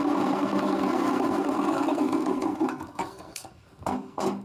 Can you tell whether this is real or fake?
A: fake